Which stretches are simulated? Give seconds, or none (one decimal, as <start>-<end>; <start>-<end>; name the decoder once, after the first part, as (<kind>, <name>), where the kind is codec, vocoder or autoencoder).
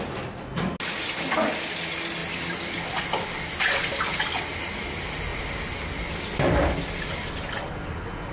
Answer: none